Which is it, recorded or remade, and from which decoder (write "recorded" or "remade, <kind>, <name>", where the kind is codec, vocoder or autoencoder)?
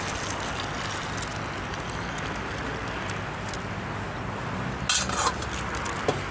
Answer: recorded